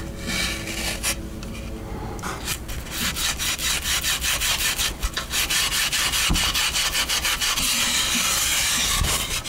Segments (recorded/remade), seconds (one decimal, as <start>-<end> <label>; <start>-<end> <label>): 0.0-9.5 recorded